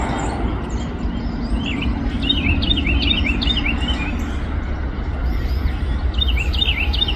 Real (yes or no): yes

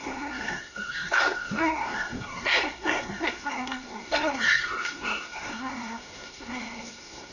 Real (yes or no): no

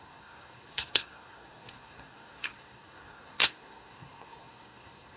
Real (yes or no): no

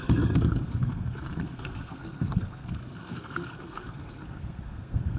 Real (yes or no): no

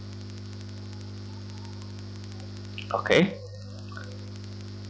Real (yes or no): yes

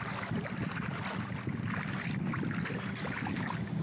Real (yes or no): yes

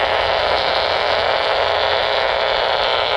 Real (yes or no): yes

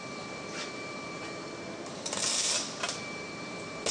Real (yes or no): no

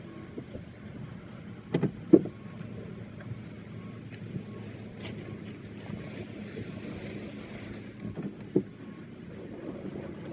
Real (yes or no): yes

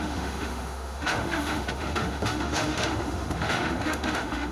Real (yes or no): no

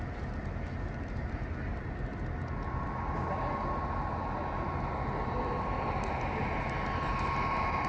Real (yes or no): yes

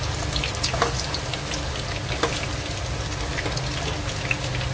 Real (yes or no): yes